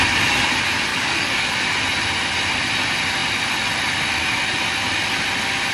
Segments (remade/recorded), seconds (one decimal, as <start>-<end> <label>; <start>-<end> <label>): 0.0-0.9 recorded; 0.9-1.5 remade; 1.5-5.7 recorded